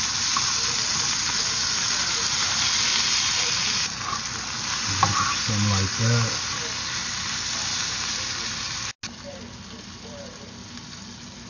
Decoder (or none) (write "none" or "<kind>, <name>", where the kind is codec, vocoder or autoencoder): none